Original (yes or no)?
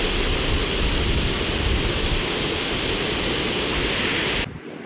yes